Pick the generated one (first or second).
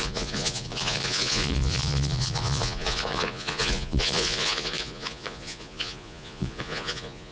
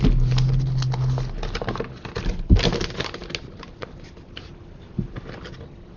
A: first